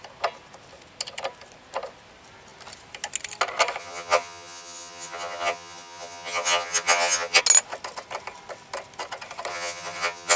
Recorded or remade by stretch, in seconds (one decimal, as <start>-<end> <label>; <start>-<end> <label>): 0.0-3.8 recorded; 3.8-7.4 remade; 7.4-9.5 recorded; 9.5-10.4 remade